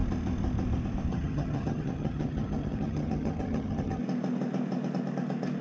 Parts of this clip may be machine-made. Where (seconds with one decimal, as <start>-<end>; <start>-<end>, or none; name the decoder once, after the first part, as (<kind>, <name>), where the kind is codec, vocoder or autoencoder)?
1.1-4.0 (vocoder, HiFi-GAN)